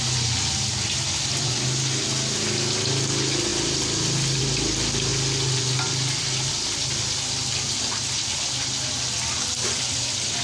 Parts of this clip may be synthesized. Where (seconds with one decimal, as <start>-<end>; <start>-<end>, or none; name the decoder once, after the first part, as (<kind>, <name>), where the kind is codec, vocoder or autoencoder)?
none